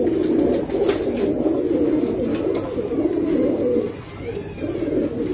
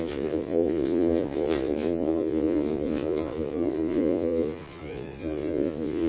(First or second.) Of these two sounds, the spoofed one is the second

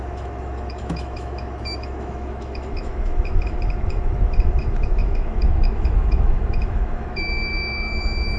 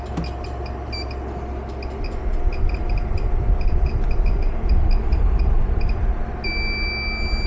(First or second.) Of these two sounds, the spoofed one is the first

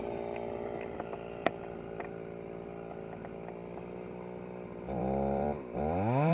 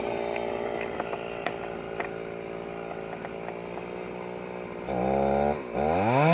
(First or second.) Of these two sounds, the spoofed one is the first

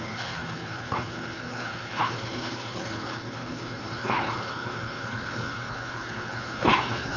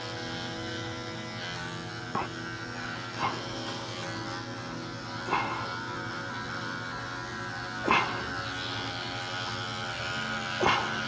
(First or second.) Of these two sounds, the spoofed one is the first